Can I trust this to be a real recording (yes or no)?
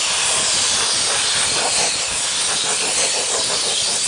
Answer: yes